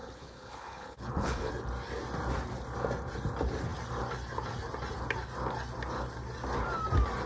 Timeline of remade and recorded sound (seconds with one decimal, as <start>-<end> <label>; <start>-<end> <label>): 0.0-1.5 remade; 1.5-7.3 recorded